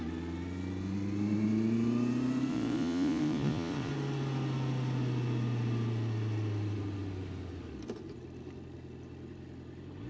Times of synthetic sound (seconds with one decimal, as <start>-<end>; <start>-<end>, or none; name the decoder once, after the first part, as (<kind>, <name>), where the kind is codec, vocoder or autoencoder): 2.5-3.9 (vocoder, Vocos)